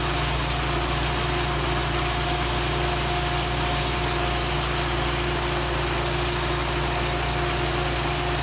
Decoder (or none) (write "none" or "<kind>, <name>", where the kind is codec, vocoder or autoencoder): none